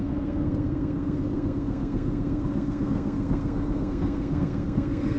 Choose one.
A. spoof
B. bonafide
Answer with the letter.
A